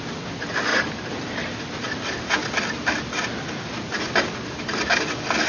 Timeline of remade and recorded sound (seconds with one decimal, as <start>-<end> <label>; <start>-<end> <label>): 0.0-5.5 recorded